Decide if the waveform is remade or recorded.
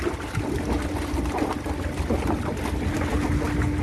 recorded